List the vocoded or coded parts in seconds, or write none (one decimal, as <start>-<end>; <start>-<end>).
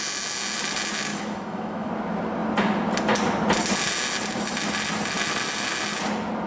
1.1-1.9